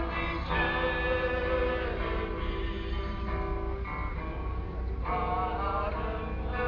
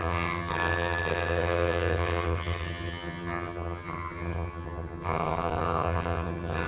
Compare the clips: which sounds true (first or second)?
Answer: first